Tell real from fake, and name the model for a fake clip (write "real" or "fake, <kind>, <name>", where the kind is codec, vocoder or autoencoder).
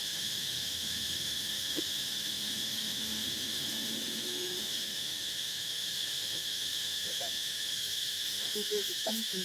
fake, autoencoder, DAC-VAE